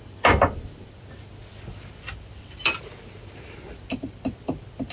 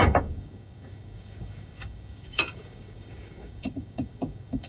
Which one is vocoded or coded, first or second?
second